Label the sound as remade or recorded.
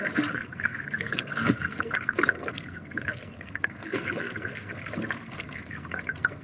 remade